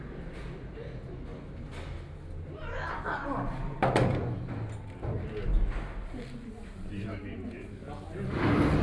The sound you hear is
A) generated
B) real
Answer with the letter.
B